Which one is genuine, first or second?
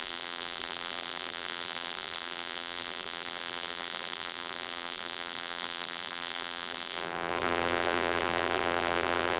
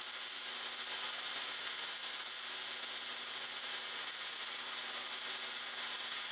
second